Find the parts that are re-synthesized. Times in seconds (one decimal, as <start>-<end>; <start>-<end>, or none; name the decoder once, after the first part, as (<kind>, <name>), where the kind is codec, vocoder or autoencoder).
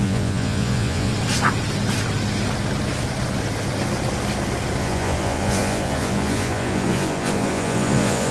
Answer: 0.0-1.1 (vocoder, Vocos); 4.8-8.3